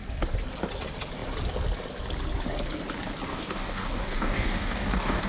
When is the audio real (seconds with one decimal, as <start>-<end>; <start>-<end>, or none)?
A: 0.0-3.3